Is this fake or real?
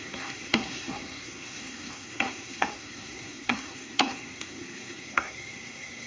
fake